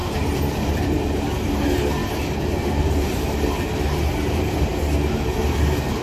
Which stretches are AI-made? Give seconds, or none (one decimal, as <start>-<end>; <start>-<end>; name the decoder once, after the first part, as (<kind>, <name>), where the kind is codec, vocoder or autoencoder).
0.0-1.5 (vocoder, BigVGAN v2)